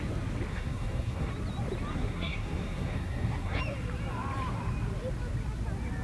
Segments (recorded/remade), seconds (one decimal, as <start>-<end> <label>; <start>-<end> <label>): 0.0-0.5 recorded; 0.5-1.3 remade; 1.3-1.9 recorded; 1.9-3.6 remade; 3.6-6.0 recorded